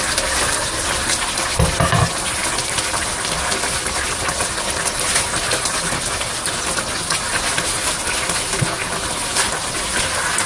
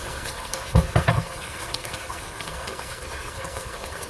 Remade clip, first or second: second